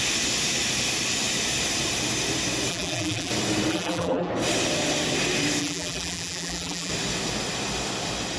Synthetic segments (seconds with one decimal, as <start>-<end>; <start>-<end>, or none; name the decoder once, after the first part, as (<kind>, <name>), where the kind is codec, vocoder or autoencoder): 2.7-3.3 (vocoder, BigVGAN v2); 3.7-4.3; 5.6-6.9